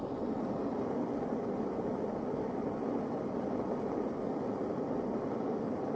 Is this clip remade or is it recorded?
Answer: recorded